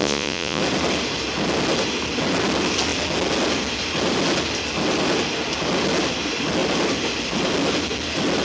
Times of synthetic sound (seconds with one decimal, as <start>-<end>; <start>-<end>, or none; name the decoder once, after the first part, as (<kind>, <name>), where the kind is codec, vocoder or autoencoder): 0.0-0.6 (vocoder, Vocos)